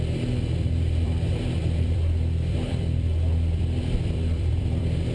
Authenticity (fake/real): fake